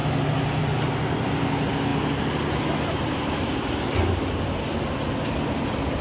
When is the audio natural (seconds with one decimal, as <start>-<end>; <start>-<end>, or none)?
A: 0.0-6.0